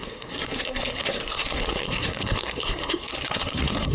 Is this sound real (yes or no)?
no